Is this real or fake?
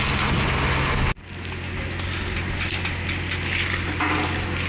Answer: real